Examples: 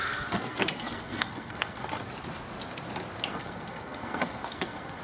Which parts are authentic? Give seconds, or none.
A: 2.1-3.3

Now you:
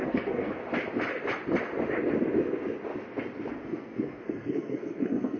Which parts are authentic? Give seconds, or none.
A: 0.6-3.5

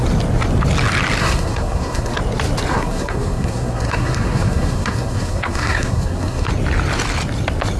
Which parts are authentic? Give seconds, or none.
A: 0.0-1.2; 2.2-2.7; 6.5-7.8

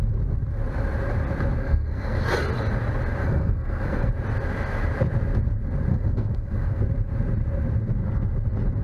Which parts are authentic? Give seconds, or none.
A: 0.0-1.6; 2.2-3.2; 4.1-5.9; 6.8-8.8

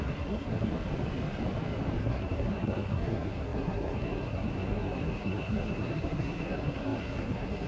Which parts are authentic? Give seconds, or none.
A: 0.7-2.0

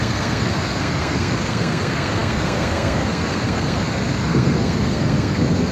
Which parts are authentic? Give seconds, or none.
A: none

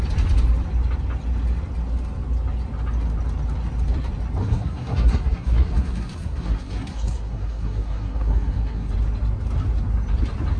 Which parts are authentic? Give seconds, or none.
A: 0.0-4.4; 8.9-10.6